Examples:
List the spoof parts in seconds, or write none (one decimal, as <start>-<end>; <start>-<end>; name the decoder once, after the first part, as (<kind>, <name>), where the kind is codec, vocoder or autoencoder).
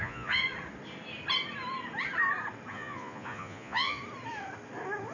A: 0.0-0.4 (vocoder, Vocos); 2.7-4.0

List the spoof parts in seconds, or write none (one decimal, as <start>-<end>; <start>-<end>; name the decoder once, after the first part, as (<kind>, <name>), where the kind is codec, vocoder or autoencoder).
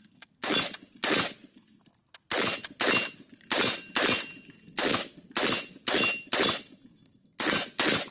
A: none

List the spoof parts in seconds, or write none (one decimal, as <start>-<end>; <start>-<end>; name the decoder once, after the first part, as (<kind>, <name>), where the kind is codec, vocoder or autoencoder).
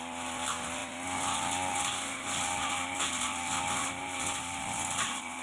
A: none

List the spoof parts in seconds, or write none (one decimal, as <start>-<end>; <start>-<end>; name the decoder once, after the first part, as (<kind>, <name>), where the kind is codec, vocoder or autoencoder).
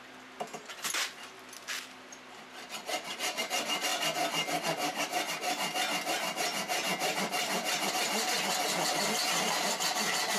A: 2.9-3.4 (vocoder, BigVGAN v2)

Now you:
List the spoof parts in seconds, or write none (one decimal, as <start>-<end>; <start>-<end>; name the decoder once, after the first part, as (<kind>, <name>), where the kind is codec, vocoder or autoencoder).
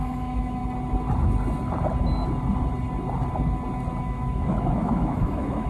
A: 0.0-0.6 (autoencoder, DAC-VAE); 4.0-5.7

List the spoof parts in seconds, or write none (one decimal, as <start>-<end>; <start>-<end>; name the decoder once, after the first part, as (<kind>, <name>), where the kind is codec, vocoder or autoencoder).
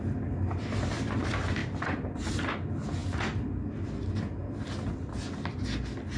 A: none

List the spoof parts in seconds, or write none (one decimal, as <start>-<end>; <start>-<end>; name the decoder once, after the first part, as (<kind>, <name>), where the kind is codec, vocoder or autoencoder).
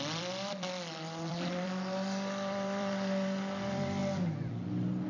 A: 0.0-4.0 (vocoder, BigVGAN v2)